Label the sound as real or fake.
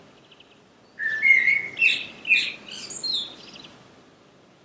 real